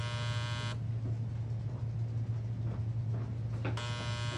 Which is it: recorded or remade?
recorded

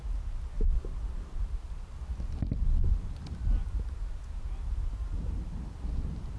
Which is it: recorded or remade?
recorded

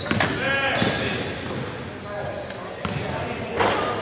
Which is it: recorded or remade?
recorded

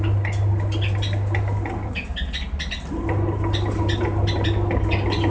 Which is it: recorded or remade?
recorded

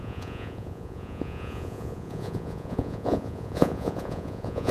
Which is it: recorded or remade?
remade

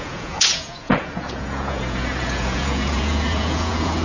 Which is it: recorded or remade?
remade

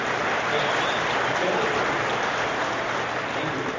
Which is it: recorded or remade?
recorded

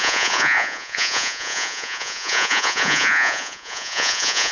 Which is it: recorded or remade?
remade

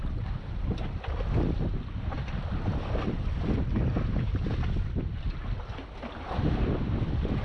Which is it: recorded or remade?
recorded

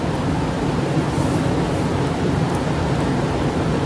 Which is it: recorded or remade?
recorded